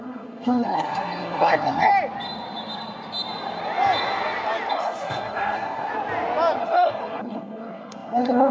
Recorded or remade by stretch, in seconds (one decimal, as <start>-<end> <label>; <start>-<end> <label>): 0.0-1.9 remade; 1.9-4.7 recorded; 4.7-5.9 remade; 5.9-6.6 recorded; 6.6-8.5 remade

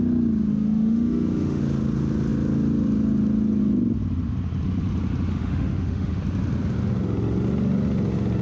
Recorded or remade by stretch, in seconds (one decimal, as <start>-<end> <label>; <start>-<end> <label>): 0.0-0.5 recorded; 0.5-1.6 remade; 1.6-5.3 recorded; 5.3-6.2 remade; 6.2-8.4 recorded

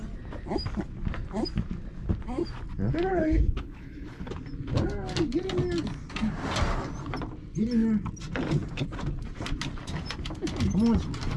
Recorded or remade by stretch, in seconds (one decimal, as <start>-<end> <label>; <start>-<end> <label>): 0.0-3.1 recorded; 3.1-4.3 remade; 4.3-11.4 recorded